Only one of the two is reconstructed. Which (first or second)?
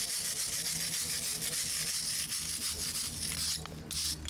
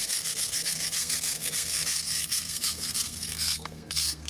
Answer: second